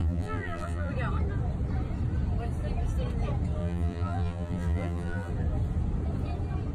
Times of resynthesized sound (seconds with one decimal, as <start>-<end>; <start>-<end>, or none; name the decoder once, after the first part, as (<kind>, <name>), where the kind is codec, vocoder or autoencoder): 0.0-0.9 (vocoder, BigVGAN v2); 3.6-5.3